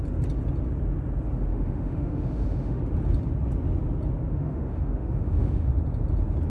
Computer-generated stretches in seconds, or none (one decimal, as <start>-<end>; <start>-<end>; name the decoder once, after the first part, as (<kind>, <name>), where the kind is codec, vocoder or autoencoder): 1.5-2.8 (autoencoder, DAC-VAE); 4.3-5.7